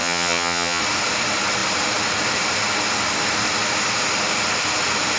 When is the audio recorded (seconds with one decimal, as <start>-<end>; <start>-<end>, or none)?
0.8-5.2